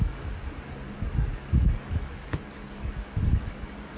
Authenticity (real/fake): fake